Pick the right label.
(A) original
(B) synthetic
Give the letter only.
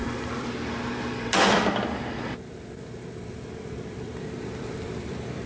B